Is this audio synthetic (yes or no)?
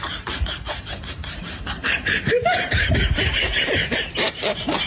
yes